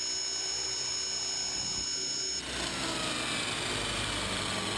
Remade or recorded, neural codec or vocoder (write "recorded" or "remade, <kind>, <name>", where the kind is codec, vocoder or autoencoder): recorded